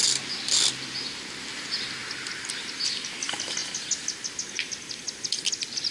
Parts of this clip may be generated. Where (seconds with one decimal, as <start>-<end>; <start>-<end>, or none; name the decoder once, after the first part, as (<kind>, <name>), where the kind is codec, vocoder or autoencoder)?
none